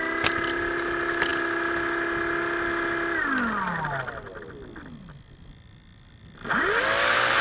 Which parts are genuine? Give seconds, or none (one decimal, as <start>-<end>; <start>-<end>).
0.0-7.4